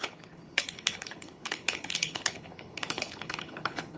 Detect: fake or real fake